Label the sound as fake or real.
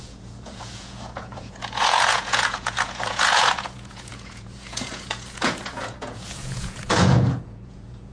fake